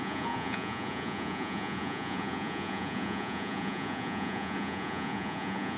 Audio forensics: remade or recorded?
remade